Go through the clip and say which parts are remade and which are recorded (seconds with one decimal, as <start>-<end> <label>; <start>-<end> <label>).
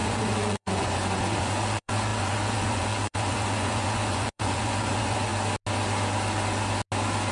0.0-5.3 remade; 5.3-7.3 recorded